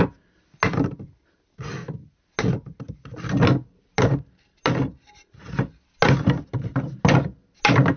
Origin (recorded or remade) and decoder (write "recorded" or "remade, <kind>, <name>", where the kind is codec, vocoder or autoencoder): recorded